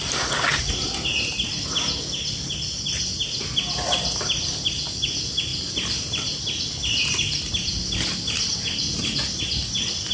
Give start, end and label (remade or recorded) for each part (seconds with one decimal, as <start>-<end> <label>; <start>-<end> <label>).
0.0-10.1 recorded